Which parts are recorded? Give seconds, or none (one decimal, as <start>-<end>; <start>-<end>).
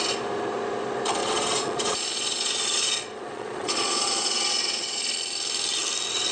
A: 0.0-1.2; 5.0-6.3